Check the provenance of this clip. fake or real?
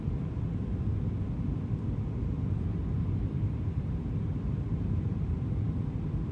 fake